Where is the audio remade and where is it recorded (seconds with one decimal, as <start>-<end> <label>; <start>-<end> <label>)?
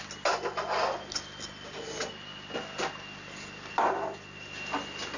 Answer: 0.0-5.2 recorded